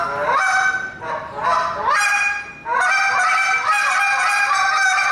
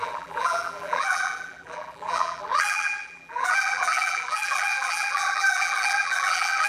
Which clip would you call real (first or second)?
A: first